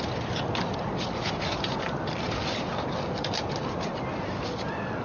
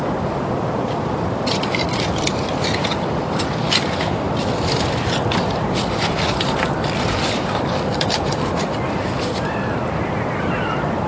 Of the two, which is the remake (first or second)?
second